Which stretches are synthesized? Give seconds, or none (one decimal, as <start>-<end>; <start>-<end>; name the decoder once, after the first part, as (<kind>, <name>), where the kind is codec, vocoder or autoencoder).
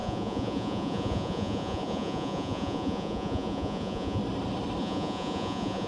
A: 0.0-4.2 (vocoder, Vocos); 4.8-5.9